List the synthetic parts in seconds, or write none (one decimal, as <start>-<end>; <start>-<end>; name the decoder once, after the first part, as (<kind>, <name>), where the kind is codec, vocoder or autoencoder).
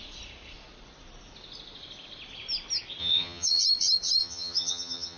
3.0-3.6 (vocoder, HiFi-GAN); 4.2-5.2